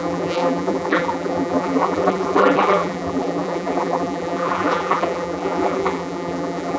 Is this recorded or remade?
remade